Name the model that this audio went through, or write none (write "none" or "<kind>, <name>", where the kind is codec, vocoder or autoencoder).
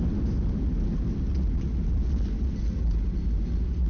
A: none